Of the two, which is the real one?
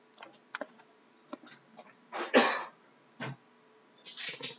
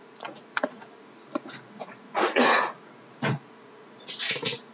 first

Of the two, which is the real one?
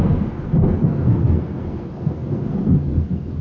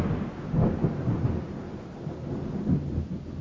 second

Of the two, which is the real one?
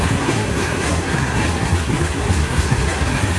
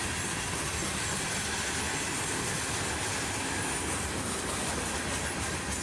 second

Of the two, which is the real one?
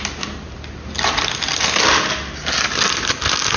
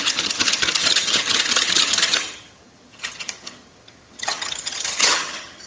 first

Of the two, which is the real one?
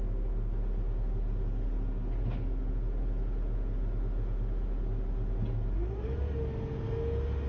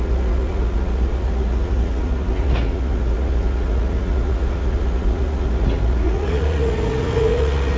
first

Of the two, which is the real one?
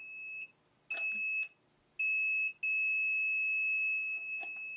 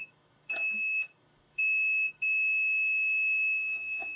first